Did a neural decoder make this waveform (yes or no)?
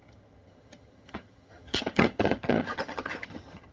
yes